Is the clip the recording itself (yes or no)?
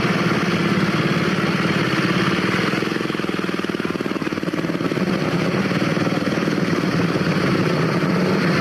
yes